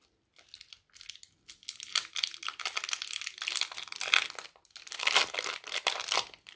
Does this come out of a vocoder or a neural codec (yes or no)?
no